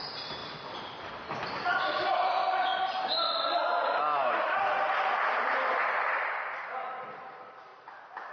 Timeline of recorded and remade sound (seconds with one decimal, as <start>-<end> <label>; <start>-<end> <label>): 0.0-7.7 remade; 7.7-8.3 recorded